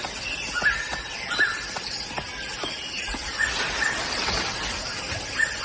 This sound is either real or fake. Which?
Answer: real